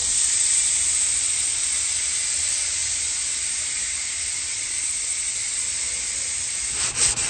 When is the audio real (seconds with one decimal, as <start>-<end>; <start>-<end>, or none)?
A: 0.7-4.5; 5.6-7.3